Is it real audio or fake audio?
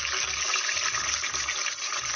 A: real